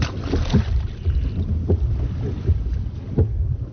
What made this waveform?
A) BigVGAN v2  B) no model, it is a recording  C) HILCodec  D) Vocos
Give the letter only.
B